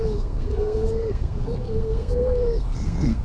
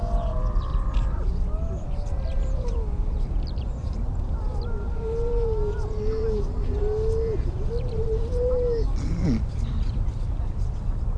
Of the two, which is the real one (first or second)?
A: second